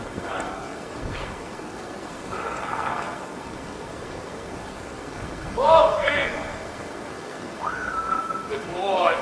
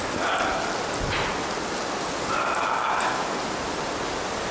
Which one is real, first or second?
second